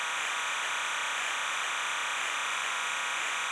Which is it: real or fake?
fake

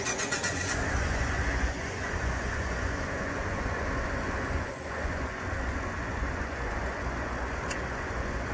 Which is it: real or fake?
fake